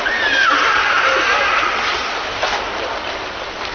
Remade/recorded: recorded